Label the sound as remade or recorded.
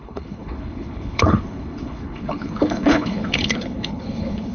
remade